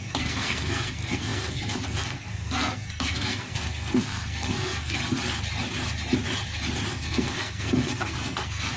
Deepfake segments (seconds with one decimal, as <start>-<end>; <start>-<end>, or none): 0.0-5.0; 6.9-8.8

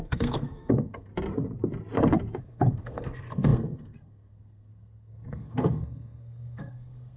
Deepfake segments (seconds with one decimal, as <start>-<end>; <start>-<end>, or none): 0.0-1.1; 2.4-7.2